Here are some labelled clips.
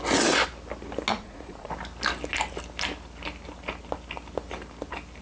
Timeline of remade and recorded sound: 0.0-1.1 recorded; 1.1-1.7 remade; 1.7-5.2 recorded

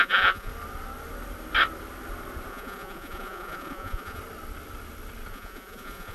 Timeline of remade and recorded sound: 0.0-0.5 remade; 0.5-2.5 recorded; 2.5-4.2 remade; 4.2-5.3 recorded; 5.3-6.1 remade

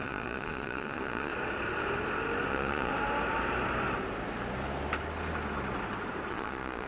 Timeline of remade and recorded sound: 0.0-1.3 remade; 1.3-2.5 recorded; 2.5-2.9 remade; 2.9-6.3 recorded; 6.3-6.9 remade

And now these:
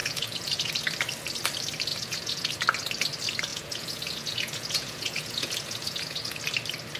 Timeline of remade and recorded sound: 0.0-0.7 remade; 0.7-1.9 recorded; 1.9-2.5 remade; 2.5-3.5 recorded; 3.5-6.4 remade; 6.4-7.0 recorded

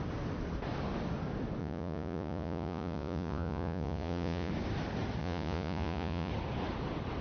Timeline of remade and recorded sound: 0.0-1.6 recorded; 1.6-4.5 remade; 4.5-5.2 recorded; 5.2-6.3 remade; 6.3-7.2 recorded